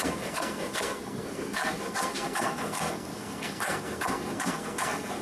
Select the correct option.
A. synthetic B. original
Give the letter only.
A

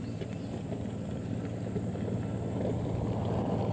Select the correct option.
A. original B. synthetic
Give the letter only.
A